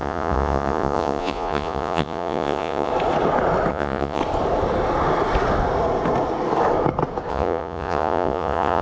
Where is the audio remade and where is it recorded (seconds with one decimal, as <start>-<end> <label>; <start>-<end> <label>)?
0.0-2.9 remade; 2.9-3.7 recorded; 3.7-4.2 remade; 4.2-7.3 recorded; 7.3-8.8 remade